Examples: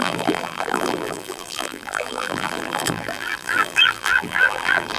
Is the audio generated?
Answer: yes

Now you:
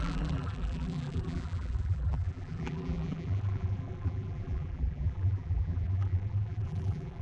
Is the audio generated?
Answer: yes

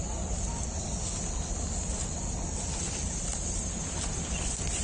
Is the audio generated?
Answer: no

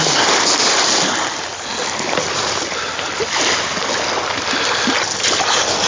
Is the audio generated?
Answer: no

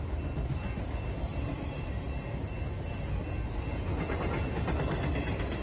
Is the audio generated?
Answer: no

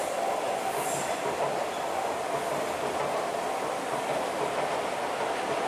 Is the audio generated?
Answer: no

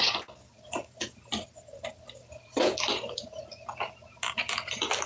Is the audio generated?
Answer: no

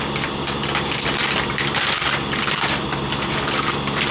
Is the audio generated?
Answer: no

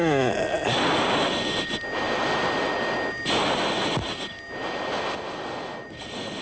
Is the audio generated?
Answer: no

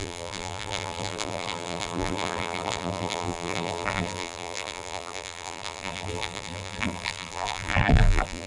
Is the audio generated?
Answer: yes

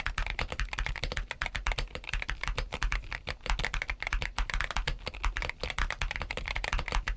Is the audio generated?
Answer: no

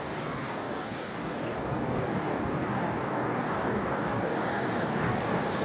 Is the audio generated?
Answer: yes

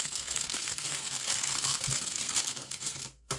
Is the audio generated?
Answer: yes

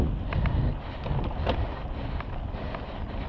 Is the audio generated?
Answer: no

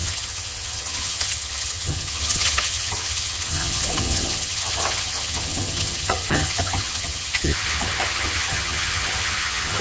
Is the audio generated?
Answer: yes